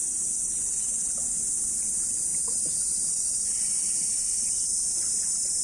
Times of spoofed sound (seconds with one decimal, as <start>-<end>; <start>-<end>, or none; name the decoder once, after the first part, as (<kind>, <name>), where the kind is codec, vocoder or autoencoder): none